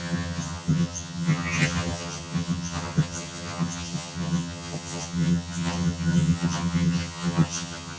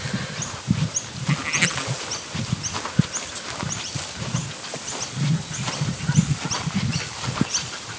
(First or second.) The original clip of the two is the second